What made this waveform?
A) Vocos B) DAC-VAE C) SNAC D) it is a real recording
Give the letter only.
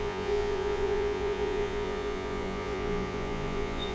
A